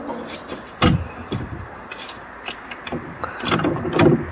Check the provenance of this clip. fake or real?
real